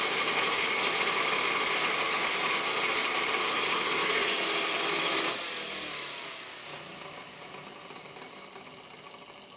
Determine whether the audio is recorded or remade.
recorded